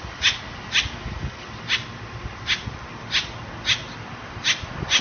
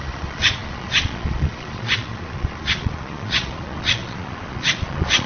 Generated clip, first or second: second